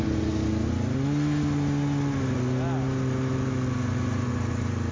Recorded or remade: recorded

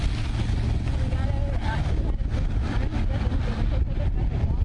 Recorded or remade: recorded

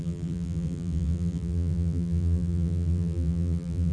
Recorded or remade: remade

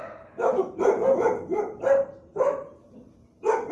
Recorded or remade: remade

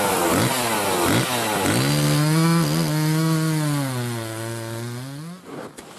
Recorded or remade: recorded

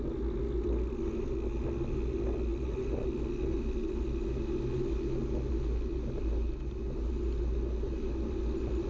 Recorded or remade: recorded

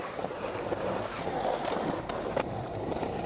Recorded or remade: remade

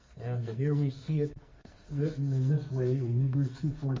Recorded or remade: remade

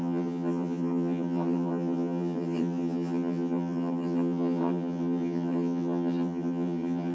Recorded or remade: remade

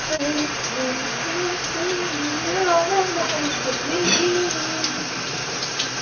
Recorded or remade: remade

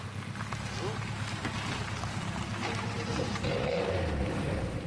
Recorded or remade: recorded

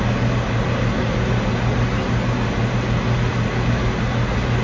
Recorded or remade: recorded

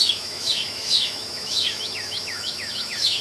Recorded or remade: remade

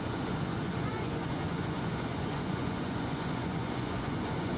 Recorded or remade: remade